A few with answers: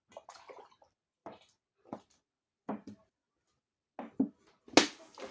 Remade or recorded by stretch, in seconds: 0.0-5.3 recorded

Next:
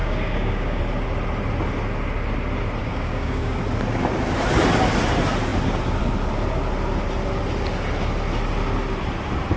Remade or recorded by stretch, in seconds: 0.0-0.8 remade; 0.8-2.8 recorded; 2.8-3.6 remade; 3.6-9.6 recorded

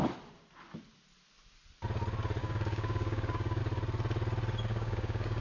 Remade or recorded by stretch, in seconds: 0.0-2.4 recorded; 2.4-3.6 remade; 3.6-4.7 recorded; 4.7-5.4 remade

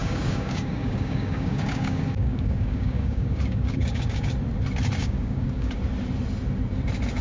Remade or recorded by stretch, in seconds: 0.0-4.3 remade; 4.3-5.0 recorded; 5.0-5.8 remade; 5.8-7.2 recorded

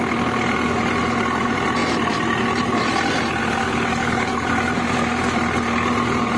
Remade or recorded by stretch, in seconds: 0.0-3.4 recorded; 3.4-4.5 remade; 4.5-6.4 recorded

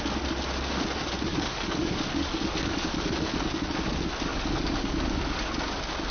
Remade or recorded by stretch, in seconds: 0.0-1.3 recorded; 1.3-3.3 remade; 3.3-4.3 recorded; 4.3-5.4 remade; 5.4-6.1 recorded

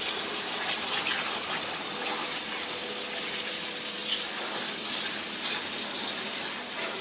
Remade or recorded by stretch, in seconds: 0.0-7.0 recorded

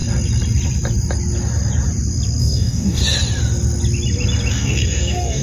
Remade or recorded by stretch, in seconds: 0.0-2.4 recorded; 2.4-3.0 remade; 3.0-4.5 recorded; 4.5-5.4 remade